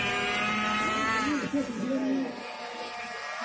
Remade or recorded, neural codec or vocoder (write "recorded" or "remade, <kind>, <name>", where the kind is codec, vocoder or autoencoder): recorded